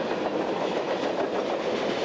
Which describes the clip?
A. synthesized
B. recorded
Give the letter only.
B